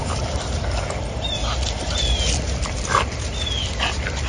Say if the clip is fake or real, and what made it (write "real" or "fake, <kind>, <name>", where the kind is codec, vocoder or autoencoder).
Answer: fake, vocoder, BigVGAN v2